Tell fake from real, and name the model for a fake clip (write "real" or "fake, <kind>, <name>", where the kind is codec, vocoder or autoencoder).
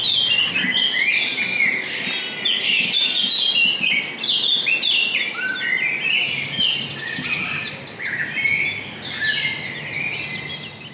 real